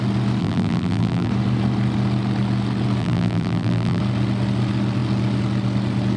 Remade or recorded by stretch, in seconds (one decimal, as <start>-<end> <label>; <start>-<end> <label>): 0.0-0.4 recorded; 0.4-1.3 remade; 1.3-3.0 recorded; 3.0-4.0 remade; 4.0-6.2 recorded